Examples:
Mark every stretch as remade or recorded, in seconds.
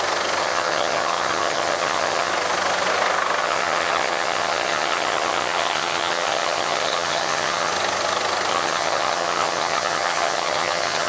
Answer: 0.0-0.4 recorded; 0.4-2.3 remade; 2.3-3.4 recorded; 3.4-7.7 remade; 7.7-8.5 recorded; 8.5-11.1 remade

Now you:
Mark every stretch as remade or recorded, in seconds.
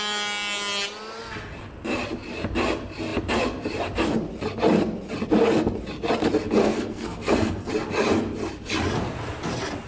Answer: 0.0-6.6 recorded; 6.6-7.7 remade; 7.7-9.9 recorded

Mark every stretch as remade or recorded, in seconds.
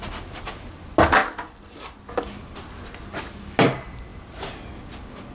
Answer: 0.0-5.3 recorded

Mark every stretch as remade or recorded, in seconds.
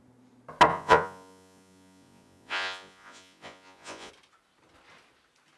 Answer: 0.0-0.7 recorded; 0.7-4.1 remade; 4.1-5.6 recorded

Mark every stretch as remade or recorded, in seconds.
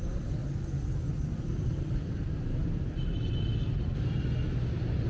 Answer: 0.0-5.1 recorded